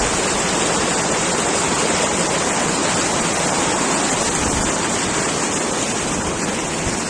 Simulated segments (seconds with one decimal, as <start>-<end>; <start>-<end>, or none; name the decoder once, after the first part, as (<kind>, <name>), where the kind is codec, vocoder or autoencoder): none